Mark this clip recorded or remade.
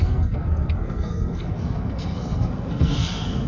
remade